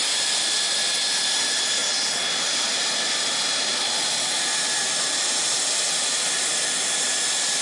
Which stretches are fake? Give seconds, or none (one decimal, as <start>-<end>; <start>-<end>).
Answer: none